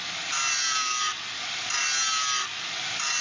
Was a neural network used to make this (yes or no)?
no